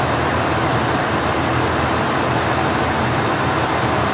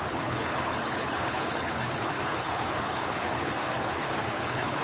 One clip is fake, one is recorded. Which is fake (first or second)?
second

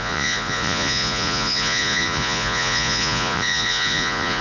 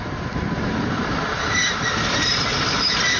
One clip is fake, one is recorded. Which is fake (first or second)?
first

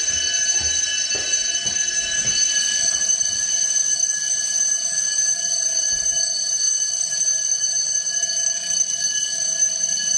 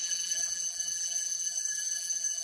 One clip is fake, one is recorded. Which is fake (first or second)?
second